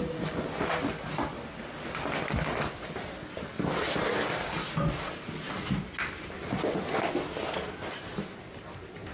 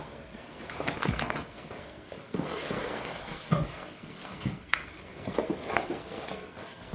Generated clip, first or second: second